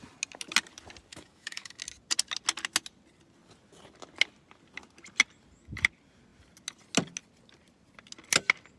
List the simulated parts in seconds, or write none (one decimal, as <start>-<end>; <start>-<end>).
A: 1.1-1.8